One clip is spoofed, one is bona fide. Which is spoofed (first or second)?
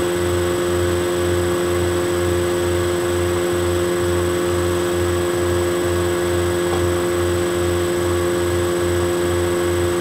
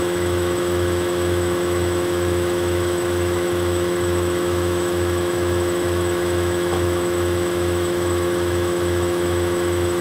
second